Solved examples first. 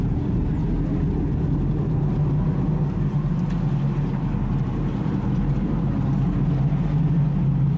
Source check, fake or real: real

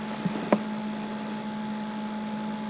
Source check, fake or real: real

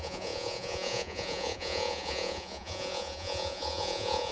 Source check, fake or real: fake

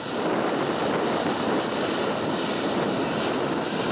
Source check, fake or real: real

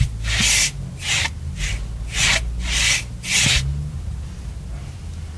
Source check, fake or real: real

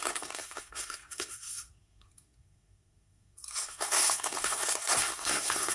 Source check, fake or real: fake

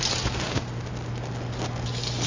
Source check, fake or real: real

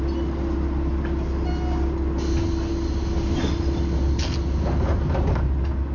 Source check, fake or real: real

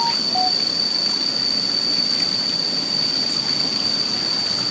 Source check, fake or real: real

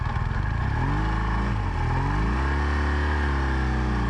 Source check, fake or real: real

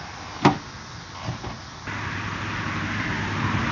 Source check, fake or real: real